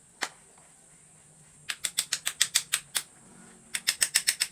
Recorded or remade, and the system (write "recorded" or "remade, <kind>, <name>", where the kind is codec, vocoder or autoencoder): recorded